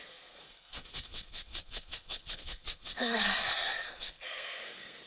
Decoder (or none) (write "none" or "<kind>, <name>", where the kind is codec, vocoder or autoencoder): codec, SNAC